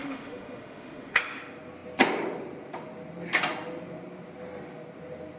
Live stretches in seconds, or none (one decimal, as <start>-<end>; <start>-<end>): 1.2-5.4